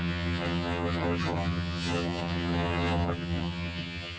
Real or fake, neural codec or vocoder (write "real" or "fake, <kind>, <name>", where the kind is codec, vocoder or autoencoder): fake, vocoder, HiFi-GAN